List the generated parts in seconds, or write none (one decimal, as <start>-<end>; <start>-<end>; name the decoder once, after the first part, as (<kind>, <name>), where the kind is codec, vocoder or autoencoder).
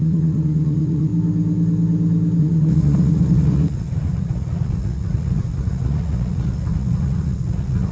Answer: 0.0-1.1 (vocoder, Vocos); 2.4-7.9